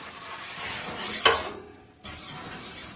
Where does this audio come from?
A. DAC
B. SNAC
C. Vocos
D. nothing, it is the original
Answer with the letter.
D